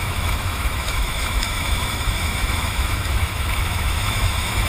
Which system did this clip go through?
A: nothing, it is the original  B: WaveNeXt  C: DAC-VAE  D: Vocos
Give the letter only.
C